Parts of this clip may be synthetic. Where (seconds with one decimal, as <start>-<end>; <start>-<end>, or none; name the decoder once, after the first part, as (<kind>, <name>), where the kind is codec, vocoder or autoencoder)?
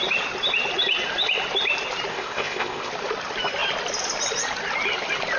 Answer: 2.1-2.9 (codec, ZipCodec)